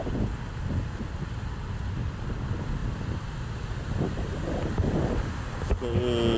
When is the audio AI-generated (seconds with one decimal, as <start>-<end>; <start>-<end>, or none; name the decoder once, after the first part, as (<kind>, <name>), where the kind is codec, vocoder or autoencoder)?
none

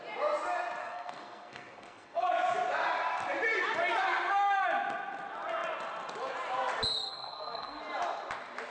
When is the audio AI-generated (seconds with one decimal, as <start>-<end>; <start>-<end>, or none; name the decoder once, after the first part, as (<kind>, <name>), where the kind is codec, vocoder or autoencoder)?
0.8-2.3 (codec, SNAC); 7.1-7.8

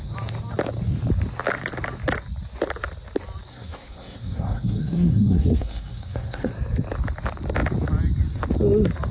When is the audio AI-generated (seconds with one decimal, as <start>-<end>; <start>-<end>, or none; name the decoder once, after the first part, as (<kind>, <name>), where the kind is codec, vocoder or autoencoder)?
3.5-6.5 (codec, SNAC)

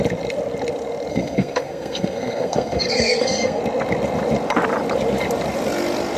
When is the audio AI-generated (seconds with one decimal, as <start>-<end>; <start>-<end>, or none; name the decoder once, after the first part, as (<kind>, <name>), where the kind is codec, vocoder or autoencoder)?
1.1-3.6 (codec, SNAC)

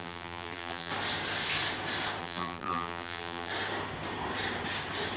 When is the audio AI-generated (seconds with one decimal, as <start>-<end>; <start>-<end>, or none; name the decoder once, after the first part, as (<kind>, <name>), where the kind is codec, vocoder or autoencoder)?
0.0-0.9 (vocoder, BigVGAN v2); 2.2-3.5

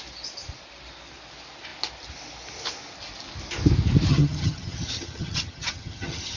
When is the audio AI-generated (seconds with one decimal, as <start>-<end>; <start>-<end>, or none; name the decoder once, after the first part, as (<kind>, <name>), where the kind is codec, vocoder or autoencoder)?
4.1-6.4 (vocoder, HiFi-GAN)